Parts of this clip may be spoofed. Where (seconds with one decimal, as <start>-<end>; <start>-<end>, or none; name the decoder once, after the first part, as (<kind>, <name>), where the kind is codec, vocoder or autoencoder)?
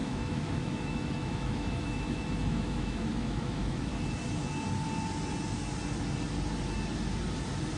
0.0-3.9 (autoencoder, DAC-VAE)